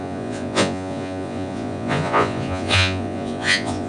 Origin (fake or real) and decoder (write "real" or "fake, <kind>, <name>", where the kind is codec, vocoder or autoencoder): fake, vocoder, Vocos